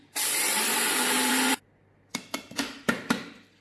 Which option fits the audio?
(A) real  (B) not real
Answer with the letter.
B